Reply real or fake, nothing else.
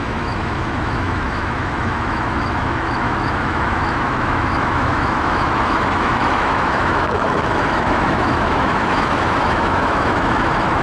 fake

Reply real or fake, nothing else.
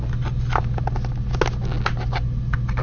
real